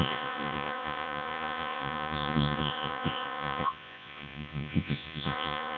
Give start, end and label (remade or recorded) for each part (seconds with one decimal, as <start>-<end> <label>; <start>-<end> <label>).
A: 0.0-5.8 remade